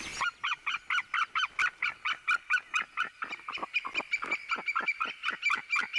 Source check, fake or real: real